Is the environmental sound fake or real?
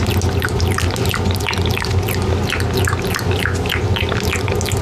real